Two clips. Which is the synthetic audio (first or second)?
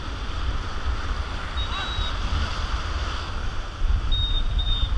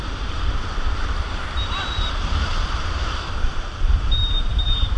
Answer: second